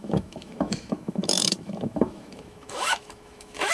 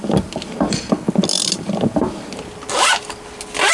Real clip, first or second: second